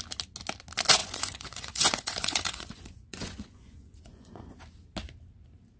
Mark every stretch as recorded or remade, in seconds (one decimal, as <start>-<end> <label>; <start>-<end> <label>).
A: 0.0-1.0 recorded; 1.0-4.5 remade; 4.5-5.8 recorded